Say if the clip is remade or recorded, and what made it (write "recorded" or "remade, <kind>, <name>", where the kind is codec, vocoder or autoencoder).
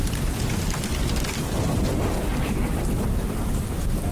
remade, vocoder, BigVGAN v2